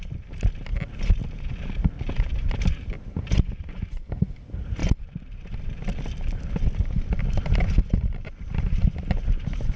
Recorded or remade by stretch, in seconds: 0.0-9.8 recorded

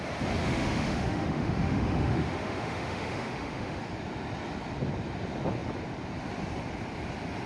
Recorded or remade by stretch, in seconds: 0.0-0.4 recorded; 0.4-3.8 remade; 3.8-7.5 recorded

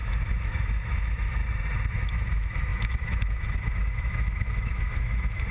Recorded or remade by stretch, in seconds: 0.0-1.4 remade; 1.4-1.9 recorded; 1.9-5.5 remade

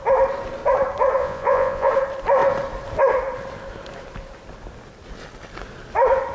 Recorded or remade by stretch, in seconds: 0.0-1.2 recorded; 1.2-1.9 remade; 1.9-6.3 recorded

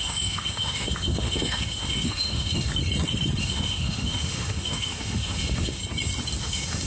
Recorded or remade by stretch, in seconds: 0.0-2.7 remade; 2.7-3.4 recorded; 3.4-5.8 remade; 5.8-6.4 recorded; 6.4-6.9 remade